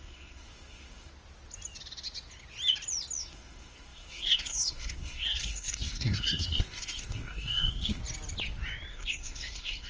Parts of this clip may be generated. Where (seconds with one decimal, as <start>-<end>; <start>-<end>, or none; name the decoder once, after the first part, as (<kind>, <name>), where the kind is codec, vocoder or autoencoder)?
0.0-1.1 (codec, SNAC); 3.2-8.0; 8.9-9.9